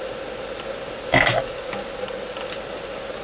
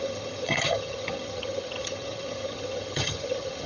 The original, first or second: first